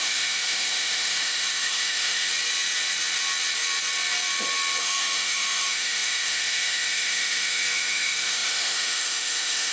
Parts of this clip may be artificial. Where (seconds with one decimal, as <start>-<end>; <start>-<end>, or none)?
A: 0.0-2.3; 4.8-9.7